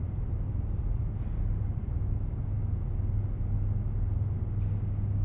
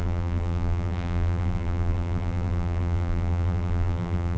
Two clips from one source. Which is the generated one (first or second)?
second